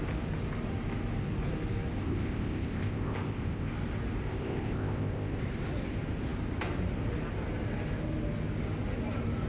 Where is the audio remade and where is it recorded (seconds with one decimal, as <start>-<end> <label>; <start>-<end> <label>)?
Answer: 0.0-2.0 recorded; 2.0-3.7 remade; 3.7-4.3 recorded; 4.3-5.3 remade; 5.3-9.5 recorded